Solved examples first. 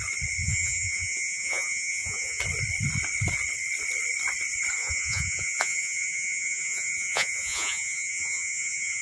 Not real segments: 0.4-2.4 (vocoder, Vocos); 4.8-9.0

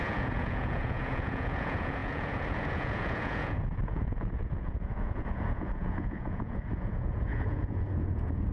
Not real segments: 0.0-8.5 (vocoder, Vocos)

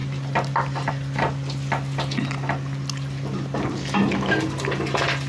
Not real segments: none

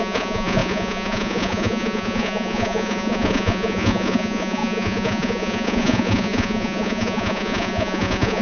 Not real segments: 0.0-8.4 (vocoder, Vocos)

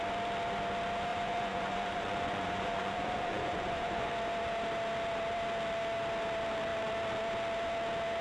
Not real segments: 1.1-4.1 (vocoder, Vocos)

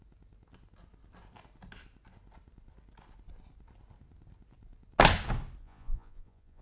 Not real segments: 5.6-6.6 (vocoder, Vocos)

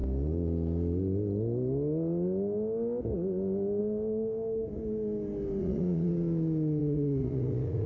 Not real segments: 5.6-6.1 (vocoder, Vocos); 6.8-7.9